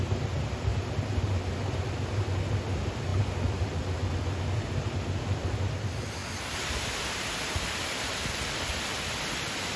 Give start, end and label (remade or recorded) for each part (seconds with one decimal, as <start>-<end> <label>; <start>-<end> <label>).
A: 0.0-9.8 recorded